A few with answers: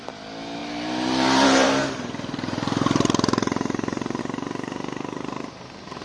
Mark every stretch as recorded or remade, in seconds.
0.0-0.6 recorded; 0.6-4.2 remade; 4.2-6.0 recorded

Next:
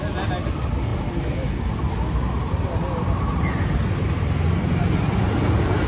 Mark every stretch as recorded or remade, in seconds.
0.0-5.9 recorded